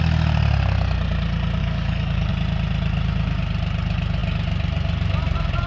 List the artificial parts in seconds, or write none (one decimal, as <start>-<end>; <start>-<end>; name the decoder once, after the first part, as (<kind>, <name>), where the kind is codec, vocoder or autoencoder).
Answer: 1.6-2.3 (codec, DAC)